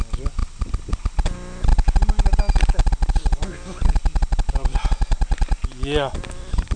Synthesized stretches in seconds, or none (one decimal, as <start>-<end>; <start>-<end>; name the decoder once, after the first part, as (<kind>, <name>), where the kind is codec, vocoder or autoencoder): none

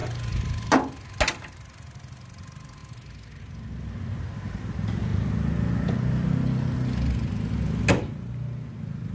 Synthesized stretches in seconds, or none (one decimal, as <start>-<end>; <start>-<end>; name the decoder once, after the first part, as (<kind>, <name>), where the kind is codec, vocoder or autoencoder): none